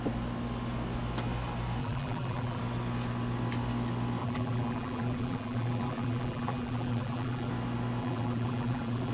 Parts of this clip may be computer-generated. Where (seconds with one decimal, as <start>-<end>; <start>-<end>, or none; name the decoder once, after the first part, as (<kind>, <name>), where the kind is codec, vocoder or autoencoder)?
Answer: 1.8-2.6 (vocoder, BigVGAN v2); 4.2-7.5; 8.0-9.1